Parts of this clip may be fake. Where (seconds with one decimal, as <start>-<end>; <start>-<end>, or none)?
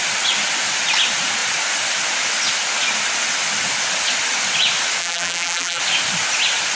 5.0-5.8